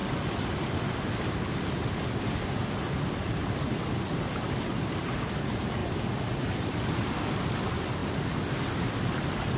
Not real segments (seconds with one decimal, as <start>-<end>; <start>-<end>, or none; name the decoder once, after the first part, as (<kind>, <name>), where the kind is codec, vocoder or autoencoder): 5.8-6.3 (vocoder, BigVGAN v2)